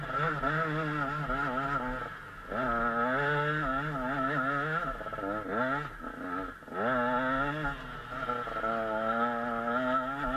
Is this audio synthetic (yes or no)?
no